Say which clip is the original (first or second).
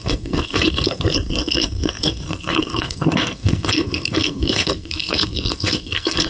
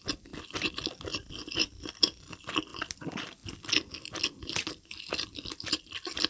second